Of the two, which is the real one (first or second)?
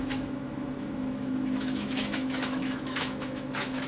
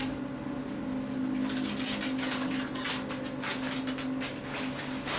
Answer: second